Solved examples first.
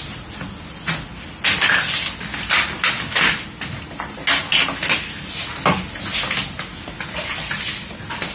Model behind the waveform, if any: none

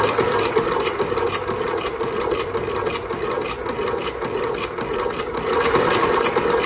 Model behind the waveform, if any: vocoder, BigVGAN v2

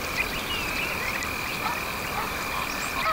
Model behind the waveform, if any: none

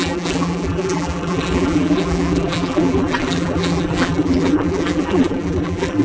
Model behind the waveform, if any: vocoder, BigVGAN v2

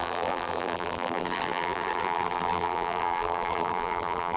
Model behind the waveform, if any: vocoder, BigVGAN v2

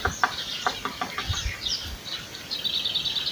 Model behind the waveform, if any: vocoder, BigVGAN v2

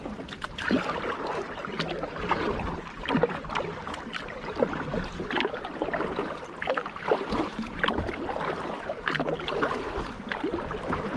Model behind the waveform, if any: none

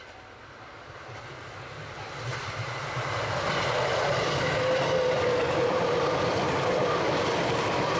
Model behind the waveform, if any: vocoder, BigVGAN v2